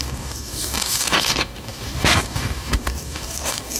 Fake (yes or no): yes